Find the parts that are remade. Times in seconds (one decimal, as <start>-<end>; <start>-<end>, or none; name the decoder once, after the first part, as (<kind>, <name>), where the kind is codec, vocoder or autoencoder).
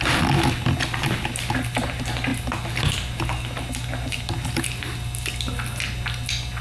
none